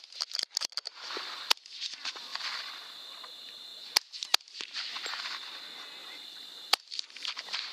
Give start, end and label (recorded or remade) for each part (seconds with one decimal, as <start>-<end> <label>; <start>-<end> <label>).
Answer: 0.0-2.3 recorded; 2.3-3.3 remade; 3.3-6.0 recorded; 6.0-7.0 remade; 7.0-7.7 recorded